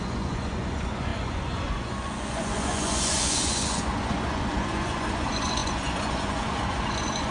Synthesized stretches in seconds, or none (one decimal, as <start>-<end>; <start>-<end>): 0.0-7.3